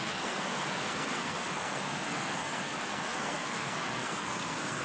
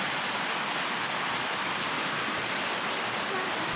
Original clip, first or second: second